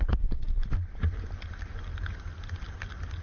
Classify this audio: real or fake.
real